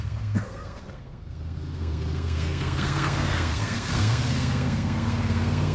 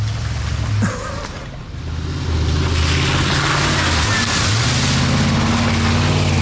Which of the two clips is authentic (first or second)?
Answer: second